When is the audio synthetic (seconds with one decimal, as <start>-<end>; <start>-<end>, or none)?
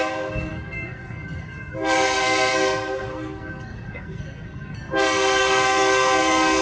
0.0-6.6